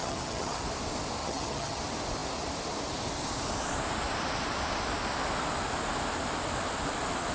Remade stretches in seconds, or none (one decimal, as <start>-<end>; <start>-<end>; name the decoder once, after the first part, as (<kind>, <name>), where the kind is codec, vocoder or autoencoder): 0.0-0.6 (vocoder, HiFi-GAN); 1.2-1.8